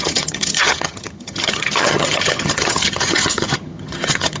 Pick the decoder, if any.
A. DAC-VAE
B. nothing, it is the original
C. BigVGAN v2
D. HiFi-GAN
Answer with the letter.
D